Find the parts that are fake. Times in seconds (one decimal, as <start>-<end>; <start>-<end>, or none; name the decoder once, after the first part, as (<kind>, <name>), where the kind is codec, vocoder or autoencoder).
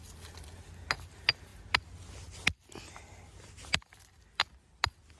none